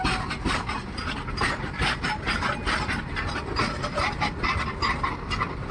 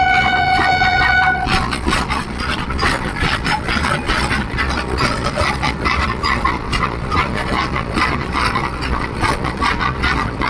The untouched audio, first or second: first